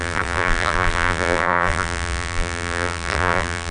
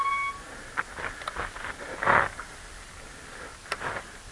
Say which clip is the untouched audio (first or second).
second